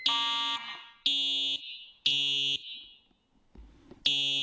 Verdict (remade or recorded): recorded